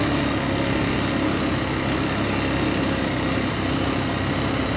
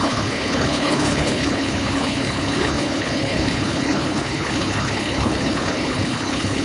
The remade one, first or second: second